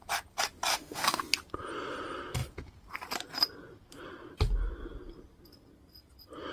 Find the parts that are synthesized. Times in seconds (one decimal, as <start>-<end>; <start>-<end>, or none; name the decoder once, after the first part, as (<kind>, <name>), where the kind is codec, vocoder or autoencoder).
0.7-1.2 (autoencoder, DAC-VAE)